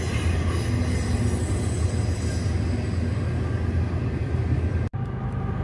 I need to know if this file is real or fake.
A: real